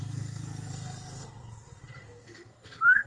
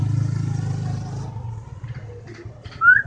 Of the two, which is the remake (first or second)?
first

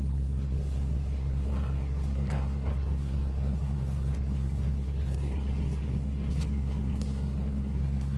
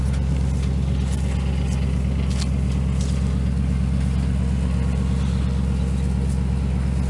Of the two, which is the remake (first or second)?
first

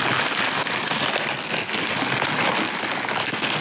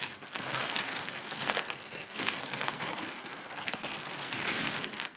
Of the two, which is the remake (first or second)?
second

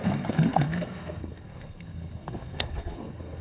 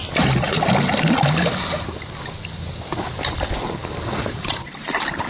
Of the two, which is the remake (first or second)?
first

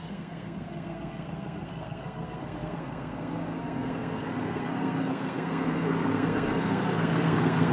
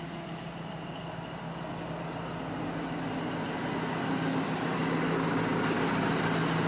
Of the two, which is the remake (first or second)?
first